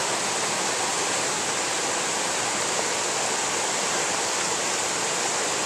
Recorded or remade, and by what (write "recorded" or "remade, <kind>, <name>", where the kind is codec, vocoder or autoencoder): recorded